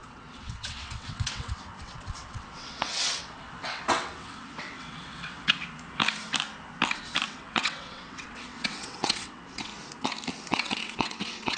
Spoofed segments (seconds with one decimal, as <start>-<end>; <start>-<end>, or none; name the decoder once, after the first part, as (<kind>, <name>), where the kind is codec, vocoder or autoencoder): 0.0-5.6 (vocoder, WaveNeXt); 7.3-9.7; 10.5-11.6